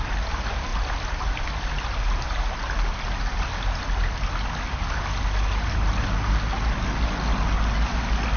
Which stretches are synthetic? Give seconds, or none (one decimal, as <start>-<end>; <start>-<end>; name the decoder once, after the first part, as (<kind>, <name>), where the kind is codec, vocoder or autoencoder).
none